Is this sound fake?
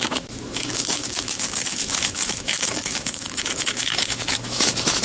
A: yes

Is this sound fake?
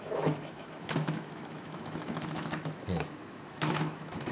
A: yes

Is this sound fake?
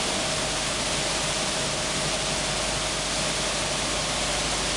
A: no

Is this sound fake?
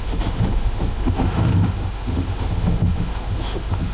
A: yes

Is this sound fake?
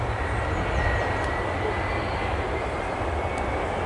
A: no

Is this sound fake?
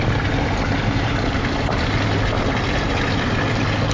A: no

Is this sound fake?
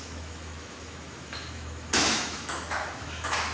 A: yes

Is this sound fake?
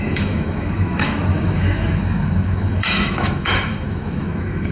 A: yes